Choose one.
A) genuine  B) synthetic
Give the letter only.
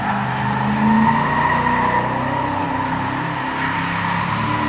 A